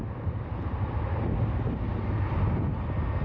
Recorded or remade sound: recorded